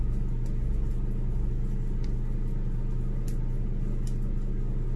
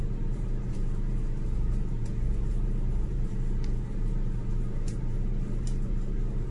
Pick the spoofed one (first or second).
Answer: second